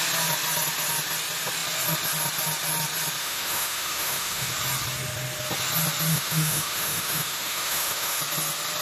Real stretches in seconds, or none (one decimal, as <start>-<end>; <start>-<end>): 0.0-3.2; 4.5-6.1; 8.2-8.8